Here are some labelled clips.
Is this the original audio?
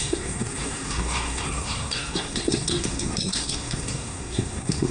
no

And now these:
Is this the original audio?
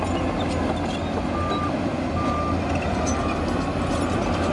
yes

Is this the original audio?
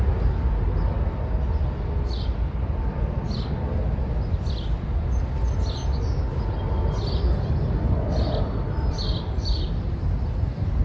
yes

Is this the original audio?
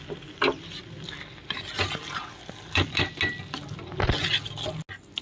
yes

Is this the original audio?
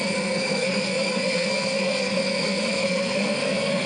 no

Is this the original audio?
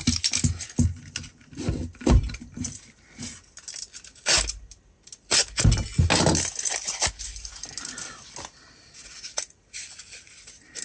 yes